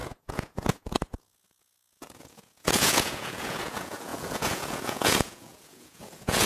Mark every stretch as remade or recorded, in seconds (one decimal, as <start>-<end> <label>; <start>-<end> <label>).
0.0-6.5 remade